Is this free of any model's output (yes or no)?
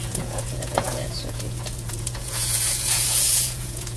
no